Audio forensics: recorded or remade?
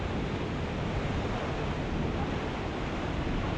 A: recorded